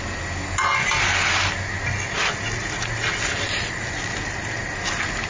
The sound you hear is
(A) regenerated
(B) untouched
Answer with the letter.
B